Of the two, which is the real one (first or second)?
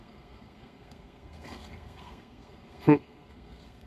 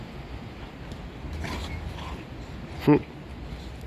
second